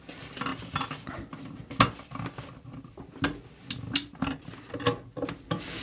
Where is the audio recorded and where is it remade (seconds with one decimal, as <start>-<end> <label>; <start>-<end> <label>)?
0.0-5.8 recorded